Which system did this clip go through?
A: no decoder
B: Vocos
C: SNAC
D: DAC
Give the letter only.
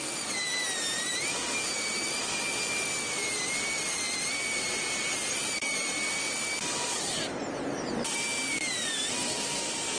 A